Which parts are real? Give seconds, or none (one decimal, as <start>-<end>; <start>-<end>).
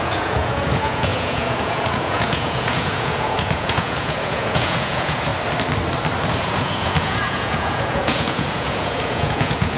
5.3-6.4